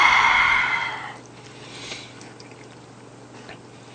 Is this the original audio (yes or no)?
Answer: yes